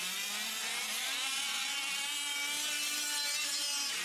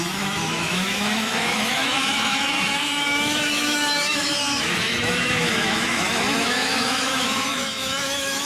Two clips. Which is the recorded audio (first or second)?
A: first